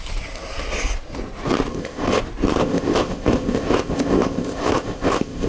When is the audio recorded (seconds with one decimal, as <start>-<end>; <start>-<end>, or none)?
0.0-1.7; 2.2-2.6